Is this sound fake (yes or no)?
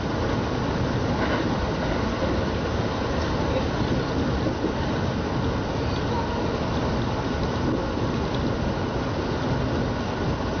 no